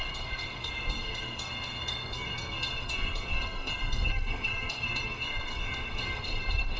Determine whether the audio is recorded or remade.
remade